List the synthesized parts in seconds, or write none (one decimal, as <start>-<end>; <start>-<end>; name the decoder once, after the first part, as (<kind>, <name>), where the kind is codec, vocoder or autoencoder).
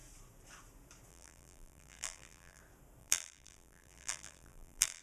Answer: 1.1-2.6 (vocoder, BigVGAN v2); 3.0-5.0